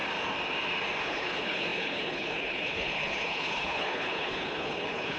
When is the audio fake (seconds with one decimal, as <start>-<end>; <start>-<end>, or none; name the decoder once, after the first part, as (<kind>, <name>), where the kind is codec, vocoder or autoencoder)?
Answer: 1.0-5.2 (codec, HILCodec)

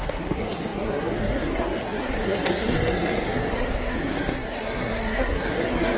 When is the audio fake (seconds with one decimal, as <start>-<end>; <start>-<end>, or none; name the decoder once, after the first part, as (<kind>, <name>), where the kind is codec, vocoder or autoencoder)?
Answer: 0.0-6.0 (codec, SNAC)

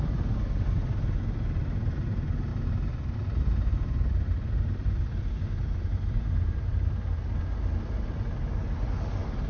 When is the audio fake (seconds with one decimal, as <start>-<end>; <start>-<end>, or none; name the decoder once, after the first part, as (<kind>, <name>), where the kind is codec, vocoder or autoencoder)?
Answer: 2.5-5.2 (vocoder, BigVGAN v2); 5.9-6.6

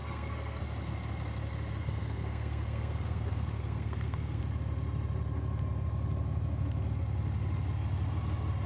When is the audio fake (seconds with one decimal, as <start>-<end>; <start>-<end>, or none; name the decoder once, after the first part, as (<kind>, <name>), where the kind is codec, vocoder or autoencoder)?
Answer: 0.0-0.6 (codec, SNAC); 1.8-4.4

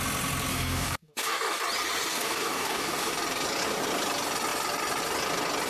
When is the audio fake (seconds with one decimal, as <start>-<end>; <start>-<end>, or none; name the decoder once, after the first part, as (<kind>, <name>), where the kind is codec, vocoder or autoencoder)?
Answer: 0.5-1.6 (codec, DAC); 2.1-3.1